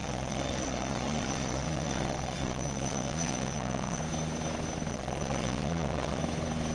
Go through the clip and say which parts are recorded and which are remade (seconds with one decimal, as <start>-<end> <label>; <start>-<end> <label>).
0.0-4.0 remade; 4.0-4.9 recorded; 4.9-6.2 remade; 6.2-6.7 recorded